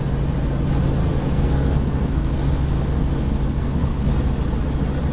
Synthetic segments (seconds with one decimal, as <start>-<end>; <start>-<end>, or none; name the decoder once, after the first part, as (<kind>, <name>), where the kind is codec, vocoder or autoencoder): 1.0-4.1 (codec, SNAC)

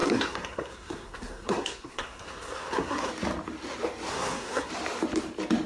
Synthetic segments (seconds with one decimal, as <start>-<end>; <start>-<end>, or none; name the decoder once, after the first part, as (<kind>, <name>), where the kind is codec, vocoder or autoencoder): 0.0-3.1 (codec, SNAC); 4.1-4.7

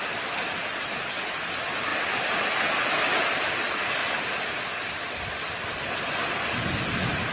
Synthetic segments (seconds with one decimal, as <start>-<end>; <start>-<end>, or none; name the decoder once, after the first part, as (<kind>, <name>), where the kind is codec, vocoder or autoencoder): none

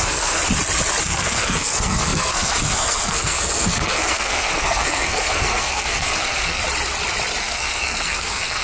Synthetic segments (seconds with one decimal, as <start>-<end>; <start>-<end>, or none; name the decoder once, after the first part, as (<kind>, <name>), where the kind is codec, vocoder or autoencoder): 0.0-0.4 (codec, SNAC); 1.0-6.6; 7.4-8.6